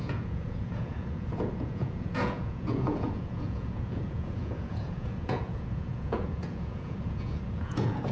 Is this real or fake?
fake